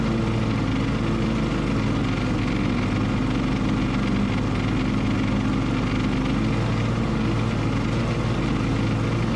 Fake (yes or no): no